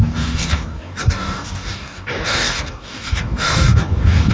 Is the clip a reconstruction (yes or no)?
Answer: yes